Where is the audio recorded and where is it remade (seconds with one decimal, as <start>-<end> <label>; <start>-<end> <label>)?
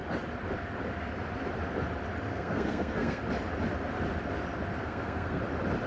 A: 0.0-2.3 recorded; 2.3-3.2 remade; 3.2-4.8 recorded; 4.8-5.4 remade; 5.4-5.9 recorded